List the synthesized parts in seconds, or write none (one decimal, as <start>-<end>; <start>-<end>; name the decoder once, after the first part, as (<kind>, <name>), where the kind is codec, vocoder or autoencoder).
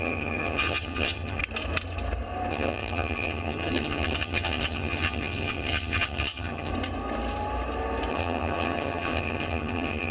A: 0.0-1.4 (vocoder, HiFi-GAN); 2.5-6.7; 8.1-10.1